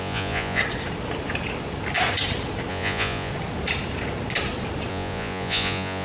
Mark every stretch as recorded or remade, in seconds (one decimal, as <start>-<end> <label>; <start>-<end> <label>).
0.0-0.6 remade; 0.6-2.7 recorded; 2.7-3.3 remade; 3.3-4.9 recorded; 4.9-6.0 remade

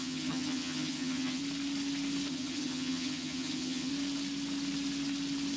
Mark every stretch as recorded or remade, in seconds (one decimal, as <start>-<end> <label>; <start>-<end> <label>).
0.0-1.4 remade; 1.4-2.3 recorded; 2.3-3.9 remade; 3.9-5.6 recorded

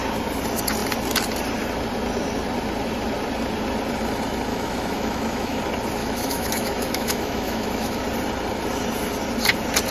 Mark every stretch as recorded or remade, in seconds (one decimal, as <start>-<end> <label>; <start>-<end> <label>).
0.0-4.5 recorded; 4.5-5.6 remade; 5.6-6.0 recorded; 6.0-8.0 remade; 8.0-9.9 recorded

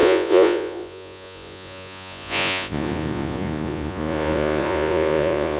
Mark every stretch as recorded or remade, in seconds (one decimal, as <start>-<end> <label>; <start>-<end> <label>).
0.0-5.6 remade

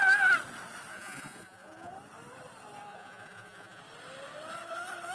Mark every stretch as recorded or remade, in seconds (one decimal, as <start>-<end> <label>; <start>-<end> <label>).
0.0-0.9 recorded; 0.9-1.9 remade; 1.9-2.9 recorded; 2.9-3.8 remade; 3.8-5.1 recorded

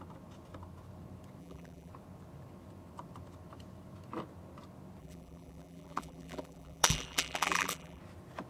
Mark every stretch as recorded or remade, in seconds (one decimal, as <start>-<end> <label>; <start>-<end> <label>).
0.0-1.4 recorded; 1.4-1.9 remade; 1.9-5.0 recorded; 5.0-8.0 remade; 8.0-8.5 recorded